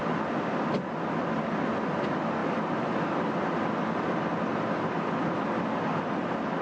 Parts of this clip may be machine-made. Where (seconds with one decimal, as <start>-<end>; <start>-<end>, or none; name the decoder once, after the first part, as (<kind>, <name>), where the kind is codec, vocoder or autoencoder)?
0.0-0.6 (vocoder, BigVGAN v2); 2.4-6.6